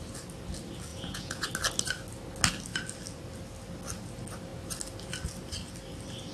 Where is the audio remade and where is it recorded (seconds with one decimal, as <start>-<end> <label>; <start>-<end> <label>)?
0.0-0.9 recorded; 0.9-1.5 remade; 1.5-6.3 recorded